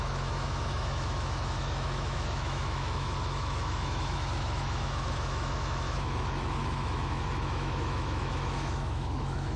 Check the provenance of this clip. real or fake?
fake